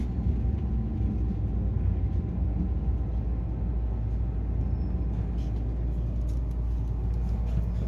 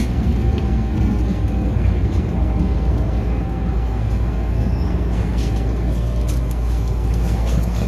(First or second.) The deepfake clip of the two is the second